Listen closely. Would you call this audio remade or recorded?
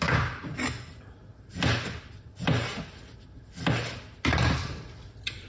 recorded